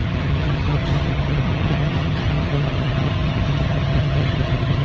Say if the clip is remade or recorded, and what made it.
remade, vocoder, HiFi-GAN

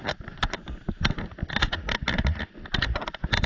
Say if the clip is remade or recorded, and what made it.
recorded